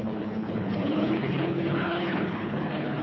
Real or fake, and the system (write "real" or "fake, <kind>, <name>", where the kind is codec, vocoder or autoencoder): fake, codec, HILCodec